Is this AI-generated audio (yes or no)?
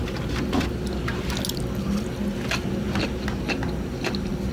no